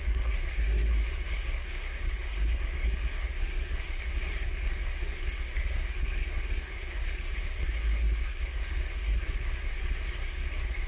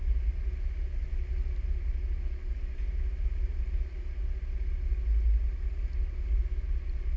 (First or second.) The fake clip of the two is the first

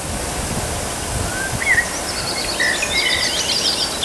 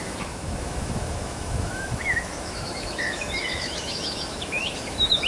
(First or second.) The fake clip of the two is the second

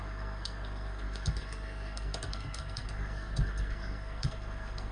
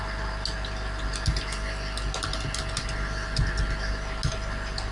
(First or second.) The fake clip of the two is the first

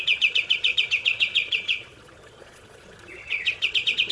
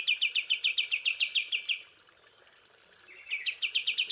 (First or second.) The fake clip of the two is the first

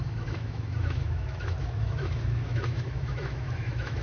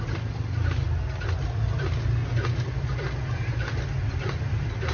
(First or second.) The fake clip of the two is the first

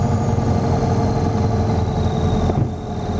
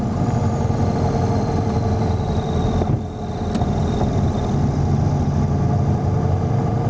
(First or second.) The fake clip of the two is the second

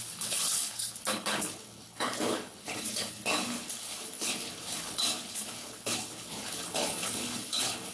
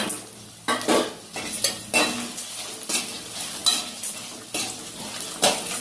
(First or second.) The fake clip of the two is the first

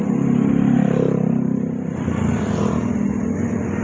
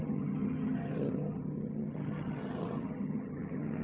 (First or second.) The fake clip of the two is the second